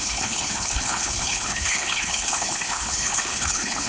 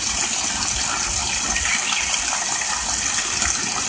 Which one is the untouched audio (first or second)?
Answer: second